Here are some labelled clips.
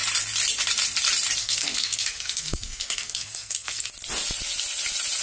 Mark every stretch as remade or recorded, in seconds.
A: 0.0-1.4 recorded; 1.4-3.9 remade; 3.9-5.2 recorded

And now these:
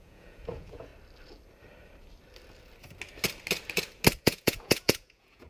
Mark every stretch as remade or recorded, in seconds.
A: 0.0-0.9 remade; 0.9-4.2 recorded; 4.2-5.5 remade

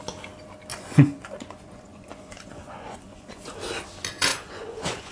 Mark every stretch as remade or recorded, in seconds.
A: 0.0-0.7 recorded; 0.7-3.5 remade; 3.5-4.3 recorded; 4.3-5.1 remade

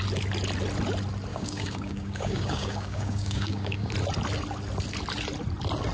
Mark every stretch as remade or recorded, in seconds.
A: 0.0-1.3 recorded; 1.3-3.9 remade; 3.9-5.9 recorded

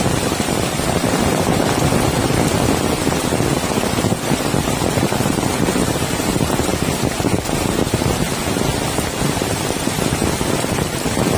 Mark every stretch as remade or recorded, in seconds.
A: 0.0-6.7 remade; 6.7-9.0 recorded; 9.0-11.4 remade

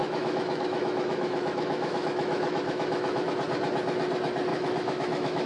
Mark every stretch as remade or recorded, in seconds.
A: 0.0-3.3 remade; 3.3-4.5 recorded; 4.5-5.5 remade